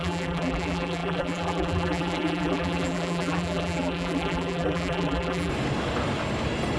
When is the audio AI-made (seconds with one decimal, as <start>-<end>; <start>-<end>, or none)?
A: 0.0-5.5